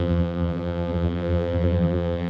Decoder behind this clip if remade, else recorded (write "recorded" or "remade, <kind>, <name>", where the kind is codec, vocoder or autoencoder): remade, vocoder, BigVGAN v2